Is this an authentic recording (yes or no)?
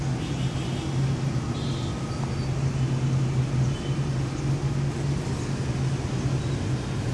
yes